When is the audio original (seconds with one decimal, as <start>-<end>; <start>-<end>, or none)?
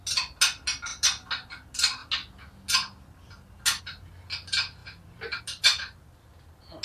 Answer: 0.0-6.8